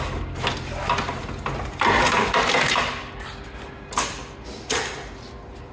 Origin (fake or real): real